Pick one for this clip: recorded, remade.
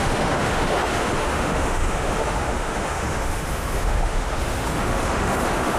remade